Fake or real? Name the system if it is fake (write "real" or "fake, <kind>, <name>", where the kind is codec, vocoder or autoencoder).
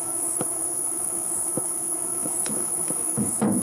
fake, autoencoder, DAC-VAE